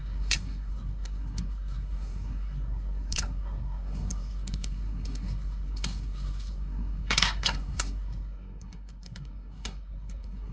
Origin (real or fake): fake